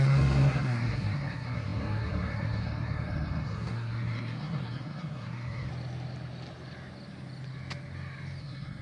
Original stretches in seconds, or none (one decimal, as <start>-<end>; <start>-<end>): 5.7-8.4